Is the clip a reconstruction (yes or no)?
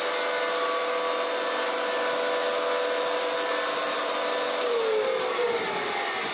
no